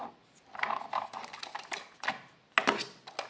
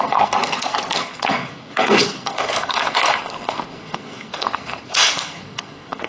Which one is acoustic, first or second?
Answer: first